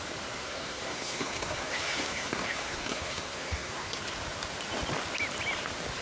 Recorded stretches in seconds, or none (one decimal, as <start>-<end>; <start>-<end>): 0.0-0.4; 4.0-6.0